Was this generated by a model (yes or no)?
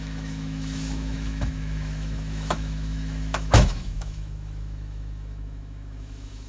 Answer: yes